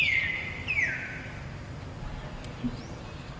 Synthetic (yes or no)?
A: no